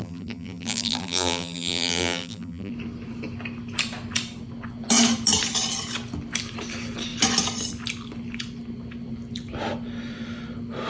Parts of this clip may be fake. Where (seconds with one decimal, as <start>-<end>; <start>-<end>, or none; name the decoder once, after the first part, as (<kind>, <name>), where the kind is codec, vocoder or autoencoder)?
0.0-2.7 (vocoder, BigVGAN v2)